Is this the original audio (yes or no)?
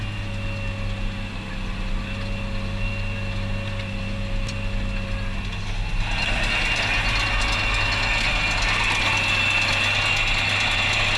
yes